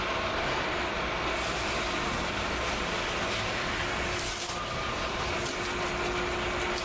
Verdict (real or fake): real